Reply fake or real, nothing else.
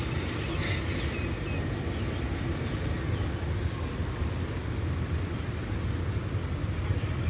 real